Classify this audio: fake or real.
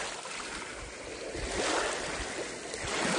real